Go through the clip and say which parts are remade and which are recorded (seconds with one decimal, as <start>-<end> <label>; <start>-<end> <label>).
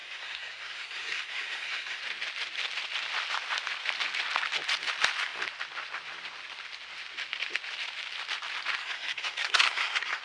0.0-2.0 remade; 2.0-8.8 recorded; 8.8-10.2 remade